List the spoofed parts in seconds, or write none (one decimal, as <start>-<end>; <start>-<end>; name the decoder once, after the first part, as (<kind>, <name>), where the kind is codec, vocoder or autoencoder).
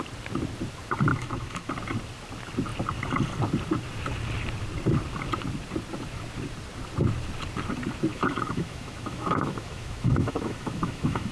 1.1-1.7 (autoencoder, DAC-VAE); 8.1-11.3